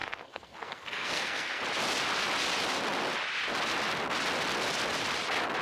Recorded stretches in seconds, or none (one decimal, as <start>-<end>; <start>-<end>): 1.6-5.6